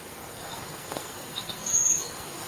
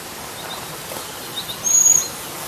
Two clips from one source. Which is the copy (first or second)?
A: first